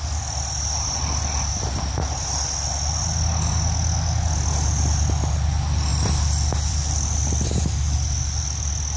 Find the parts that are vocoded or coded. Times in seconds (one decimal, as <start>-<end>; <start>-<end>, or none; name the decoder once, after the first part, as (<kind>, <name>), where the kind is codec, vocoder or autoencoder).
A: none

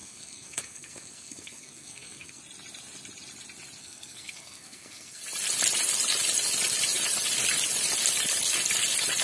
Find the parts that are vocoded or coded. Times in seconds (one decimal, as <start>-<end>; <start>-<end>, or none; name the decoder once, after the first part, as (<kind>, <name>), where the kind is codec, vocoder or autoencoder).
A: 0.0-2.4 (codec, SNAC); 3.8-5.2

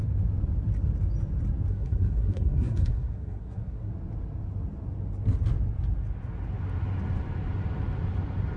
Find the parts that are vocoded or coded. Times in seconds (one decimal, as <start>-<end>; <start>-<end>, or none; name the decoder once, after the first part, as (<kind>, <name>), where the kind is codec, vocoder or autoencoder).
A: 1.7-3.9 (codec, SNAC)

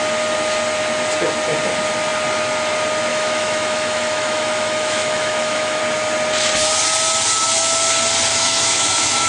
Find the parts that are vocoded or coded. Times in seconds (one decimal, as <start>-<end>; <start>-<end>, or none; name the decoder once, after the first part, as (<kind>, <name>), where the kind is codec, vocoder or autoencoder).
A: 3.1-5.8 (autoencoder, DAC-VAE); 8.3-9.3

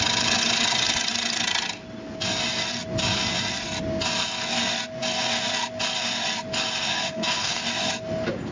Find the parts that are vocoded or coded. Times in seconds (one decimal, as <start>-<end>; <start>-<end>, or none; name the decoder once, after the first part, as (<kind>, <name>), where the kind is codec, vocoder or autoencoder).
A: 6.9-7.6 (codec, SNAC)

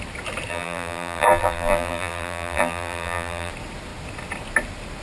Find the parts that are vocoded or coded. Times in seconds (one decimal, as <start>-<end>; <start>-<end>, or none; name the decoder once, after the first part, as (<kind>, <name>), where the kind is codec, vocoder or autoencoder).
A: 0.5-3.5 (vocoder, BigVGAN v2)

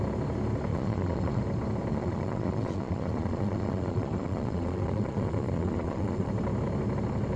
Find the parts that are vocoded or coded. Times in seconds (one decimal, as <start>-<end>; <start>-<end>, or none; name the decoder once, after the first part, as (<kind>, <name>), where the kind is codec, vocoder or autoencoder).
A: 0.7-1.4 (vocoder, Vocos); 1.9-6.3

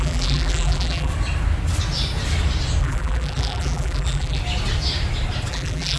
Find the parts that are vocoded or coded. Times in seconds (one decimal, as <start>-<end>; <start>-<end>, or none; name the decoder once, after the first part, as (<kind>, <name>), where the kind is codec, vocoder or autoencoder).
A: 0.0-1.1 (vocoder, BigVGAN v2); 2.8-4.4; 5.5-6.0